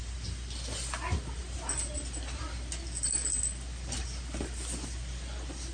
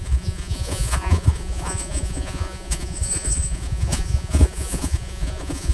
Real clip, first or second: first